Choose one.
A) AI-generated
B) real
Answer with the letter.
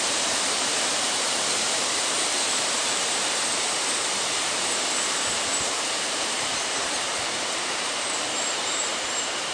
A